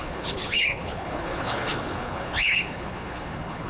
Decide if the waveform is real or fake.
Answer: fake